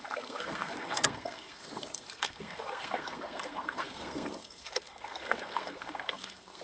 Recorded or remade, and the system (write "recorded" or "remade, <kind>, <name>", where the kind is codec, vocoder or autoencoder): remade, codec, SNAC